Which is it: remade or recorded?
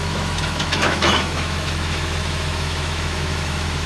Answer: remade